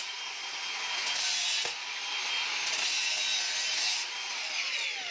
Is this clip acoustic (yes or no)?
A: yes